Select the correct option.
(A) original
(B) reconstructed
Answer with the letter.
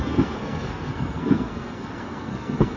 B